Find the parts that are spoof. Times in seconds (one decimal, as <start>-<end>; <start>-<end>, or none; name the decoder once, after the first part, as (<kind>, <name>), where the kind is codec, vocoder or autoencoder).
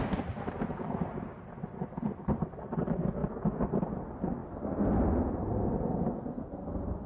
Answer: none